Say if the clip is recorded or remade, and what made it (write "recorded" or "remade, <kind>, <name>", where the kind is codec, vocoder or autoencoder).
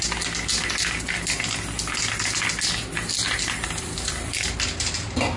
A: recorded